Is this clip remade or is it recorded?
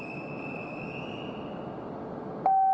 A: recorded